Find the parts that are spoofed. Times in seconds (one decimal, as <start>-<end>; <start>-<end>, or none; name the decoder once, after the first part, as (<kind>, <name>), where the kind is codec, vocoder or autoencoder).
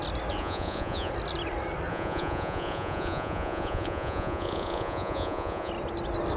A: 0.4-1.1 (vocoder, Vocos); 1.9-5.7